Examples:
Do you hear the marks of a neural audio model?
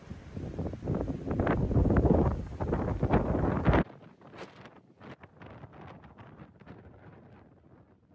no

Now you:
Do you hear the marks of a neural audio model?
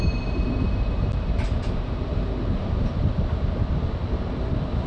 no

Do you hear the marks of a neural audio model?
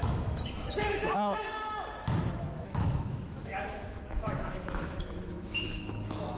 yes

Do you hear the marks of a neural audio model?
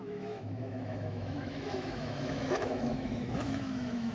yes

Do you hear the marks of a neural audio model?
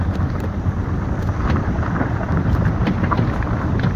yes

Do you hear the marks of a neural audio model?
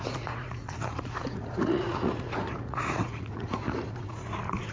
yes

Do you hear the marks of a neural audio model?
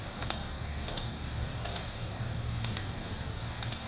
yes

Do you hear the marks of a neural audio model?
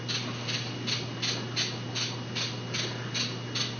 no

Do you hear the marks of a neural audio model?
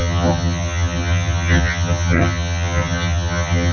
yes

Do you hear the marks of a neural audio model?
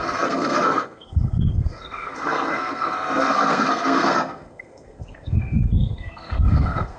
yes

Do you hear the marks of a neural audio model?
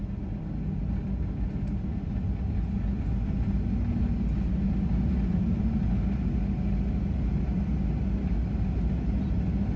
no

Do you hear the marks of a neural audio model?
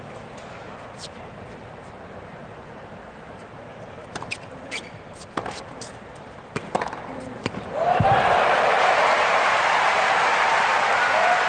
yes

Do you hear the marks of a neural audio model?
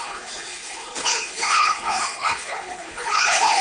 yes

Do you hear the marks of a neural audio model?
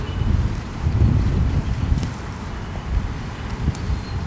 no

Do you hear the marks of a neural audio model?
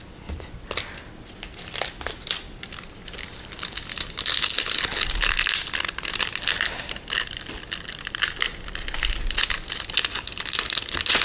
no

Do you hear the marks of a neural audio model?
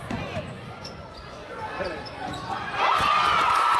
yes